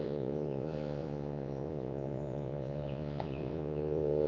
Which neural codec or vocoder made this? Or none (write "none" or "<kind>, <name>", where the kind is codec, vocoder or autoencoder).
vocoder, Vocos